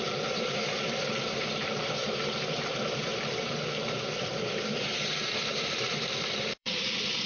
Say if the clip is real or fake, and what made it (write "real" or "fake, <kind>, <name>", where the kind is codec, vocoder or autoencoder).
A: fake, vocoder, BigVGAN v2